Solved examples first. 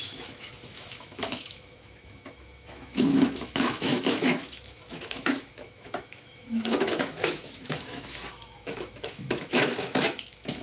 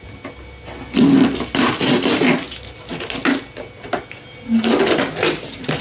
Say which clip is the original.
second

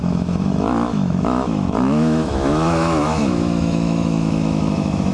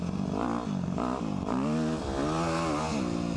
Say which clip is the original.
second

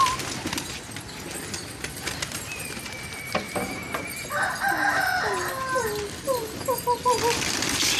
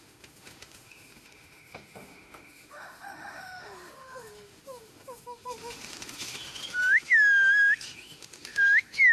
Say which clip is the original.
first